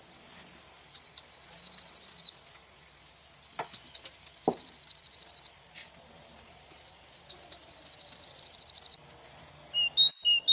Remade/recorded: recorded